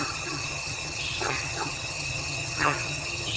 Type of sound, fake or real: fake